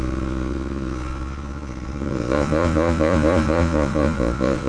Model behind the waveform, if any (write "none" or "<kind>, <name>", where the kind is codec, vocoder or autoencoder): vocoder, Vocos